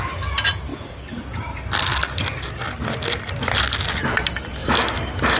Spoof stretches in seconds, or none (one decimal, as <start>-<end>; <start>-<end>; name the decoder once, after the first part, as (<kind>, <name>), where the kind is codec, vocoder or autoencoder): 4.6-5.4 (vocoder, BigVGAN v2)